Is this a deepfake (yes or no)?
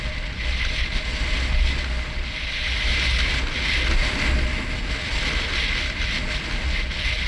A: no